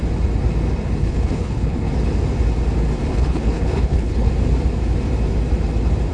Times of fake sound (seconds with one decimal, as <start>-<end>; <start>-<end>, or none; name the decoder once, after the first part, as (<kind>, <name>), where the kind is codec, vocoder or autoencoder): 1.0-1.9 (codec, HILCodec); 3.1-4.3

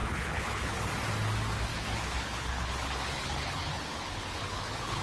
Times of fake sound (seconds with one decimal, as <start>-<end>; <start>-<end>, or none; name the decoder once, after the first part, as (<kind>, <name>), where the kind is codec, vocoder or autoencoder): 0.0-0.9 (codec, HILCodec); 1.7-5.0

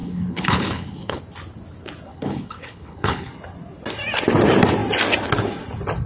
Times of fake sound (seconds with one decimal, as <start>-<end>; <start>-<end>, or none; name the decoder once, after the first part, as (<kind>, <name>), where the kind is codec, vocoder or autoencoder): 0.0-1.2 (codec, HILCodec); 2.1-3.3

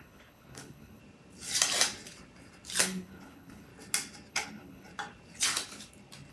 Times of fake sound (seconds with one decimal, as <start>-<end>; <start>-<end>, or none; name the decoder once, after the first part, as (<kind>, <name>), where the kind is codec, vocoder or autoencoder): 0.0-1.0 (codec, HILCodec); 2.8-3.7; 4.3-4.9